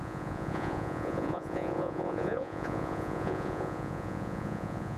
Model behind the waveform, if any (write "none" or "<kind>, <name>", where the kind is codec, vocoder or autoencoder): vocoder, Vocos